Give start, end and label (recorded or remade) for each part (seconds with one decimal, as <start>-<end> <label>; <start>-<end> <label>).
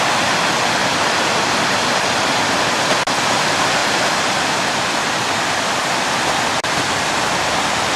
0.0-0.8 recorded; 0.8-1.6 remade; 1.6-3.8 recorded; 3.8-7.0 remade; 7.0-8.0 recorded